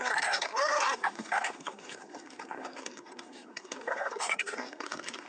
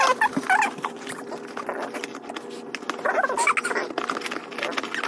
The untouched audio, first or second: second